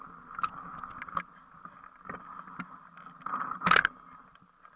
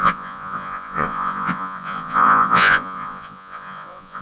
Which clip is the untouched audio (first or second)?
first